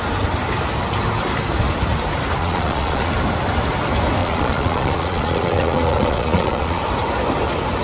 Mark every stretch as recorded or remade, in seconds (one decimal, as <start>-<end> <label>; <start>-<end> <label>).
0.0-2.4 recorded; 2.4-3.1 remade; 3.1-4.2 recorded; 4.2-6.8 remade; 6.8-7.8 recorded